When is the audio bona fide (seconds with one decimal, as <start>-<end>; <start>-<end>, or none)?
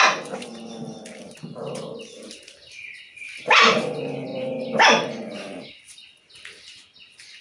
0.0-7.4